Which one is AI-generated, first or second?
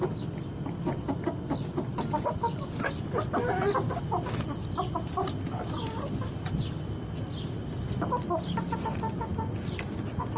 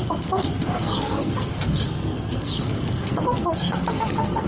second